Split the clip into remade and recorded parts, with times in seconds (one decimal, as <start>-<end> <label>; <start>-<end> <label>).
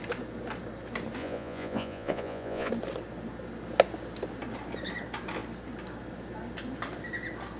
0.0-1.2 recorded; 1.2-2.7 remade; 2.7-7.6 recorded